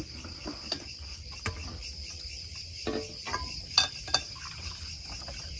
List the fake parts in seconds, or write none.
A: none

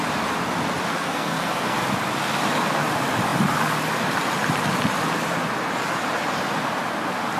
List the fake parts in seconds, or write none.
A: 0.9-1.8 (codec, SNAC)

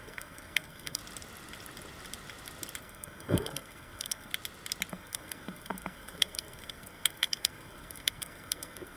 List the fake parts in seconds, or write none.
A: 0.0-1.0 (codec, SNAC); 2.8-4.3; 4.9-9.0